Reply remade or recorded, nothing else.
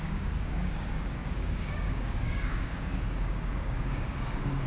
remade